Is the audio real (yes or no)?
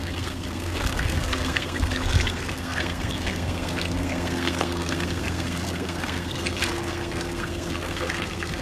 no